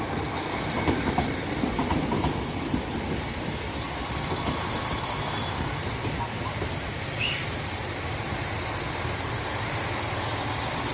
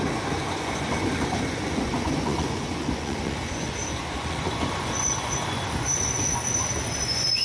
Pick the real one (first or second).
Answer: first